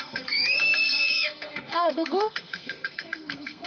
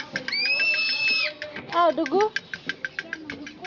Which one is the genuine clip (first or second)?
second